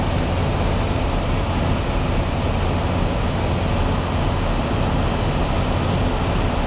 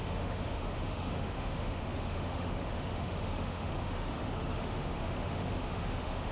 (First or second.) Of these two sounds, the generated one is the second